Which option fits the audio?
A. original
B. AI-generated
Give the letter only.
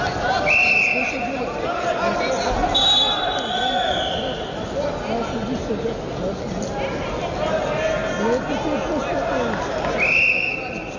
A